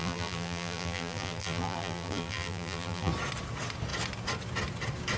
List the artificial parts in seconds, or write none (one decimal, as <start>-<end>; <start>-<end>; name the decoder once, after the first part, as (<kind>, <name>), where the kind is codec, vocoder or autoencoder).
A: 0.0-3.1 (vocoder, BigVGAN v2)